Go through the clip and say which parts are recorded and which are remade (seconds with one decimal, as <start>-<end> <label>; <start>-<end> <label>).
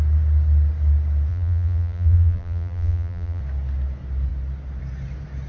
0.0-1.3 recorded; 1.3-3.4 remade; 3.4-5.5 recorded